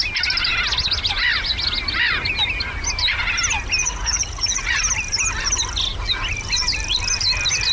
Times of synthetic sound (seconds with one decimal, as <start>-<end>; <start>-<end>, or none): 3.8-4.8